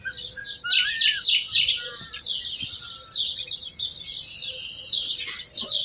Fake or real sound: real